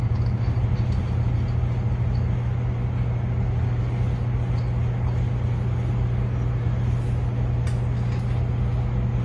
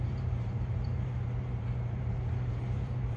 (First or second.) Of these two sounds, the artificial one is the second